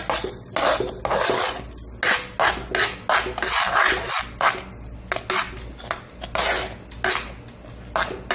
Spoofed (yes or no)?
no